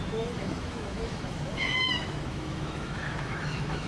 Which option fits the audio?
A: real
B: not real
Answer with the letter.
B